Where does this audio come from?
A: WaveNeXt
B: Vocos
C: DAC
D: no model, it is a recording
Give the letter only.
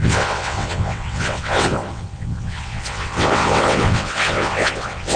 A